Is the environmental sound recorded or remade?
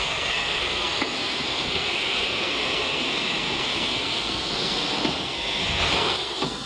remade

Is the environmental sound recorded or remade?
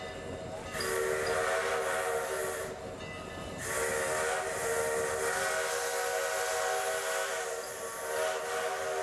recorded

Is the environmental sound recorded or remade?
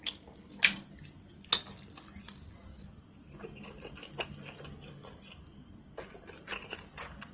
recorded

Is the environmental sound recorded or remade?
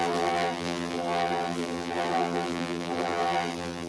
remade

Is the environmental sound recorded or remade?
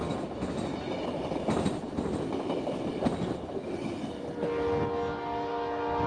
recorded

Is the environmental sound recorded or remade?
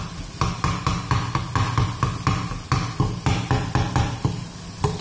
recorded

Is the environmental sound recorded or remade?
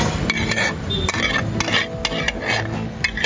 recorded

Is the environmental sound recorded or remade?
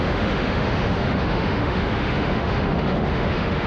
remade